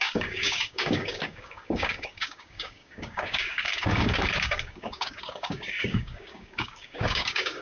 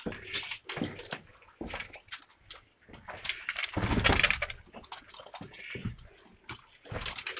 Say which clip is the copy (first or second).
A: first